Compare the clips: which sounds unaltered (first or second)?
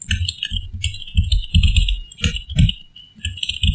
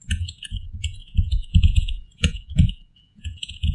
first